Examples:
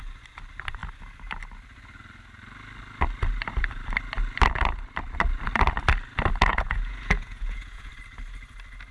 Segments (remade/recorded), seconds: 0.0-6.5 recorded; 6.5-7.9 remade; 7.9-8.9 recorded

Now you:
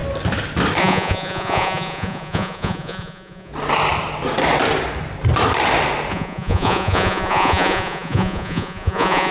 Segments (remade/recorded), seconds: 0.0-0.8 recorded; 0.8-3.5 remade; 3.5-6.1 recorded; 6.1-9.3 remade

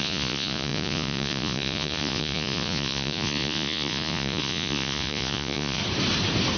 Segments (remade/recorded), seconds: 0.0-5.8 remade; 5.8-6.6 recorded

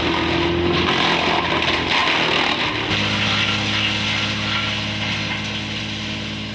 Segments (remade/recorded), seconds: 0.0-6.5 recorded

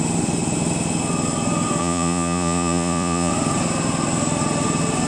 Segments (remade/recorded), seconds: 0.0-1.8 recorded; 1.8-3.3 remade; 3.3-5.1 recorded

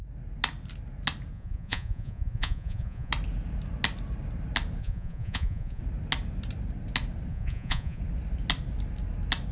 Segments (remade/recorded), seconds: 0.0-1.3 recorded; 1.3-3.1 remade; 3.1-4.8 recorded; 4.8-5.8 remade; 5.8-7.3 recorded; 7.3-8.0 remade; 8.0-9.5 recorded

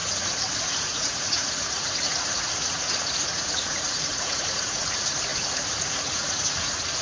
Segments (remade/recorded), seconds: 0.0-7.0 remade